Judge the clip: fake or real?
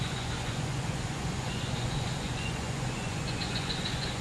fake